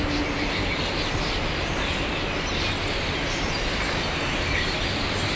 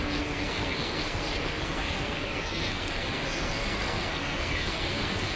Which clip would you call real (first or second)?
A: first